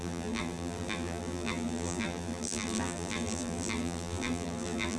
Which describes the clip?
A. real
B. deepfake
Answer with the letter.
B